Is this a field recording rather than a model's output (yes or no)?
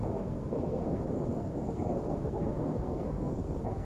no